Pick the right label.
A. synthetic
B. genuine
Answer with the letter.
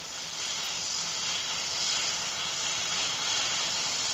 A